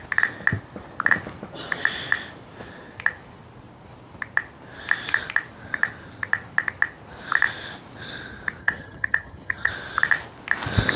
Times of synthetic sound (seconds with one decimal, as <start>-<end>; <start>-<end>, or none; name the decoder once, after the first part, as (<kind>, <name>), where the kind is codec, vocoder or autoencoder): 8.6-9.7 (vocoder, HiFi-GAN)